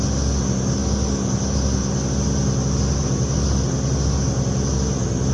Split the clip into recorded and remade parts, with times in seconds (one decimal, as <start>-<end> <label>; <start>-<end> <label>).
0.0-5.3 recorded